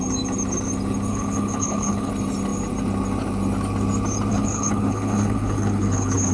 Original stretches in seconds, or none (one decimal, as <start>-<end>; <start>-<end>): 0.0-1.1; 2.1-4.3